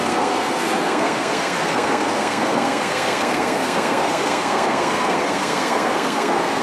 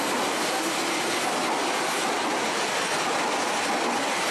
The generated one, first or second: first